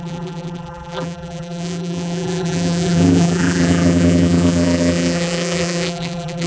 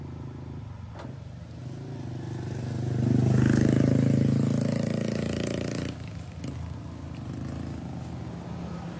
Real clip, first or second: second